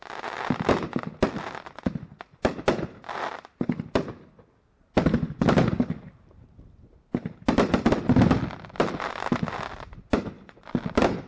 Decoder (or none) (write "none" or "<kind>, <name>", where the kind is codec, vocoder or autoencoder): none